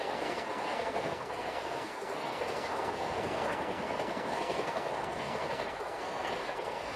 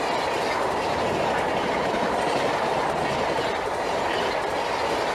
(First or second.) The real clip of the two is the second